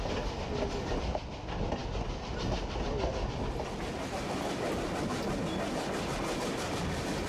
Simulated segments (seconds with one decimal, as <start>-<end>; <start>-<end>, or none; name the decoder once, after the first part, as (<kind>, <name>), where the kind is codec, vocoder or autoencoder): none